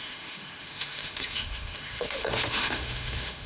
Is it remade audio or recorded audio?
remade